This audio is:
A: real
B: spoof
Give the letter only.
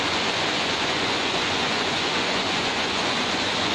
B